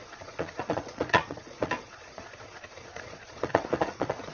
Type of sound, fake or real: fake